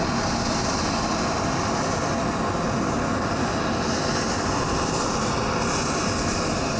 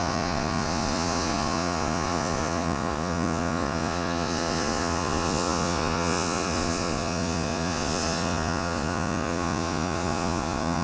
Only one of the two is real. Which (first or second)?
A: first